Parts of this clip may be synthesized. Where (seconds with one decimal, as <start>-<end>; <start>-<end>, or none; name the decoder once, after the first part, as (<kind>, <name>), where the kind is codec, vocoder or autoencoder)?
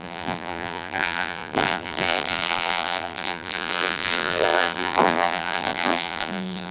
0.0-6.7 (vocoder, BigVGAN v2)